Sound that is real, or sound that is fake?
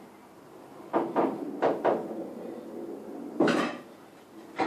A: real